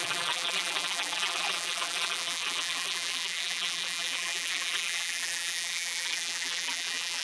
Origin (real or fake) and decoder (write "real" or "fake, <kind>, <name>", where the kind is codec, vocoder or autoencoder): fake, vocoder, BigVGAN v2